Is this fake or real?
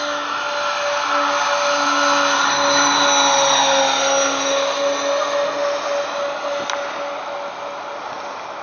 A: real